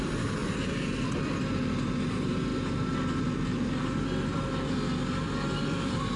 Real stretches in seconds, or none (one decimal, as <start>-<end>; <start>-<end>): 0.4-1.1